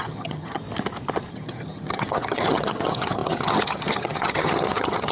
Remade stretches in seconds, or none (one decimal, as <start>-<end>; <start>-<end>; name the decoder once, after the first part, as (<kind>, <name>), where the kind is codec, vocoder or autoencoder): 0.0-0.6 (vocoder, HiFi-GAN); 1.3-5.1